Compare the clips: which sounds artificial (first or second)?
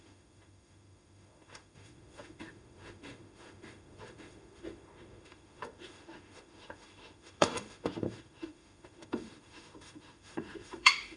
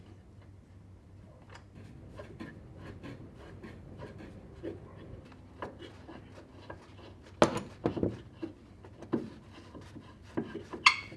first